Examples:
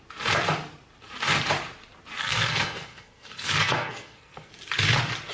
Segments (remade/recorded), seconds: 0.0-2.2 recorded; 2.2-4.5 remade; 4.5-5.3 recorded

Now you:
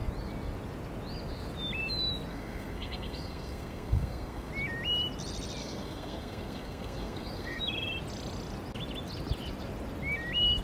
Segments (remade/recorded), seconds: 0.0-2.3 recorded; 2.3-4.5 remade; 4.5-5.6 recorded; 5.6-7.6 remade; 7.6-10.6 recorded

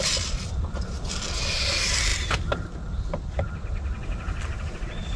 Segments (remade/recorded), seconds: 0.0-5.2 recorded